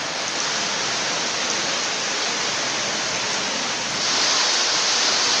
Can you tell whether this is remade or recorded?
recorded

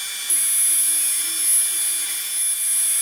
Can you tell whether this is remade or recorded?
recorded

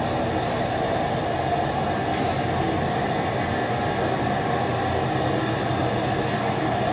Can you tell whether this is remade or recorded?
recorded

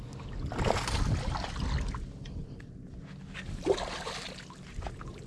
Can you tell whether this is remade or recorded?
recorded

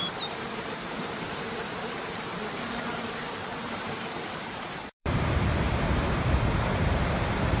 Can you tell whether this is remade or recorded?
remade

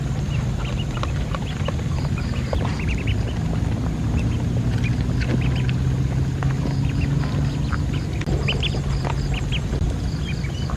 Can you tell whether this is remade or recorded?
recorded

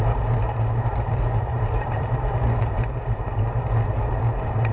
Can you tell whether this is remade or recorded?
remade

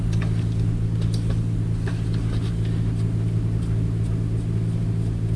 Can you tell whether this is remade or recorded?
recorded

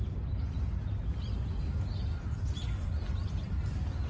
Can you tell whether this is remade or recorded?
recorded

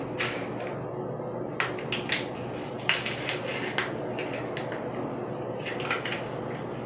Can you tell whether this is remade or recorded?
recorded